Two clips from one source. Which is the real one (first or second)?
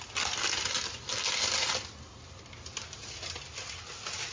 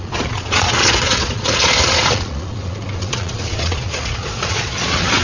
first